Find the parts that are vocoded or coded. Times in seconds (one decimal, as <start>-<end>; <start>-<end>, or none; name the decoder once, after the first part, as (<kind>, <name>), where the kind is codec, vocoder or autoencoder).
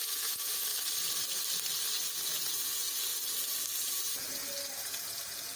0.0-0.7 (vocoder, Vocos); 1.9-3.1; 3.9-5.6